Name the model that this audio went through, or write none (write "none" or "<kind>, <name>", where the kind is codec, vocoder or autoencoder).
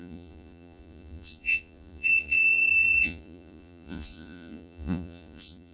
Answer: vocoder, Vocos